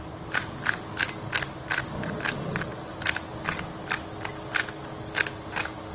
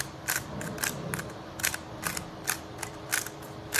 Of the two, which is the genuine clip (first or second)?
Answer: first